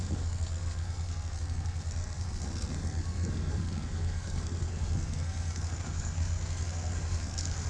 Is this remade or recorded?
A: remade